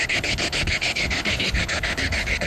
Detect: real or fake fake